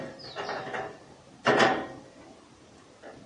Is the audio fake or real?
fake